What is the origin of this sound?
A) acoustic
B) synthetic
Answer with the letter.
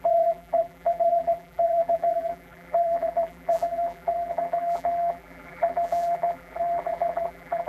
B